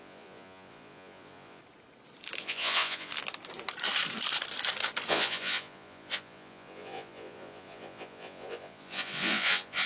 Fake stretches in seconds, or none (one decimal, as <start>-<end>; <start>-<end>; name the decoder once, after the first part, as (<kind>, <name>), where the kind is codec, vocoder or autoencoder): 0.0-1.6 (vocoder, Vocos); 2.4-3.1; 5.1-9.9